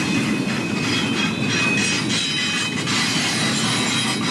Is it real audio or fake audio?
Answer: real